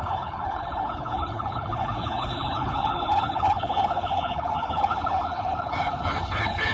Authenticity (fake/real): fake